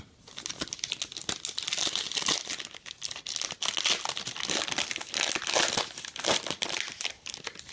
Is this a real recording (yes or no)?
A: yes